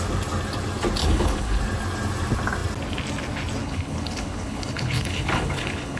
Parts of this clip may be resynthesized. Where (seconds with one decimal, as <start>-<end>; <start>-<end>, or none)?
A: 1.0-1.6; 3.6-6.0